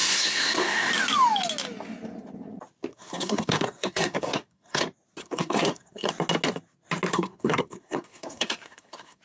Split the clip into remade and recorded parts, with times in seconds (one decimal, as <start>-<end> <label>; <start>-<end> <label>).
0.0-0.9 remade; 0.9-2.9 recorded; 2.9-4.8 remade; 4.8-5.2 recorded; 5.2-6.1 remade; 6.1-7.1 recorded; 7.1-9.2 remade